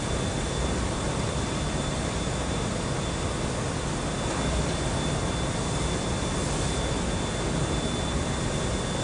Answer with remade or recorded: recorded